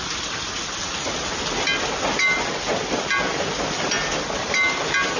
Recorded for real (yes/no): yes